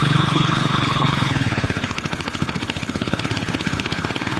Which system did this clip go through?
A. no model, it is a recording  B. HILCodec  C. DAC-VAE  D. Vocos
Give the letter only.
B